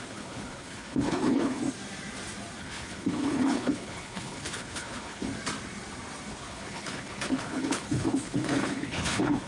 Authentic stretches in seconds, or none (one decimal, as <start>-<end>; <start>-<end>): 1.6-2.6; 5.3-6.3